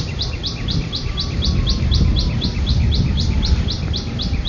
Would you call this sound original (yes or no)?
no